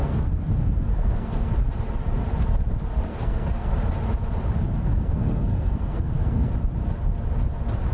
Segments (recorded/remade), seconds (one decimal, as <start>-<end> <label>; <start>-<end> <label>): 0.0-1.5 remade; 1.5-3.1 recorded; 3.1-3.7 remade; 3.7-4.8 recorded; 4.8-6.5 remade; 6.5-7.9 recorded